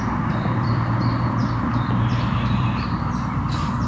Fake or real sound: fake